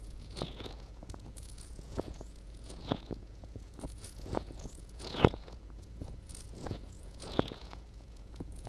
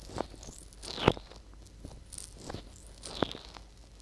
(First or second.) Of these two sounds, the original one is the second